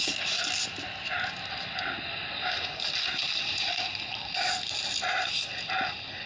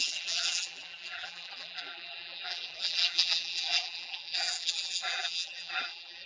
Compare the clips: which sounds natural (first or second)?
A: first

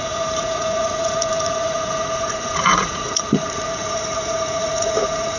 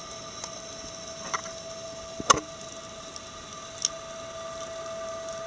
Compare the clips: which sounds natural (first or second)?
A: second